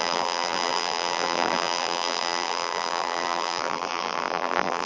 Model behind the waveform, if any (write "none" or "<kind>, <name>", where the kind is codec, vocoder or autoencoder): vocoder, BigVGAN v2